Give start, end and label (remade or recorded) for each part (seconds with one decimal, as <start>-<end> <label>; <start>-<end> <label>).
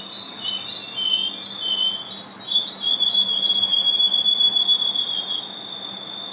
0.0-6.3 recorded